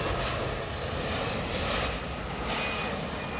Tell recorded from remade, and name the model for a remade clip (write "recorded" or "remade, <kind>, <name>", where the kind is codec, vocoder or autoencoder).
recorded